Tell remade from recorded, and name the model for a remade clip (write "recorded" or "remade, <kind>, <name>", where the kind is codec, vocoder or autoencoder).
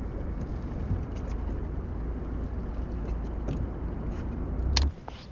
recorded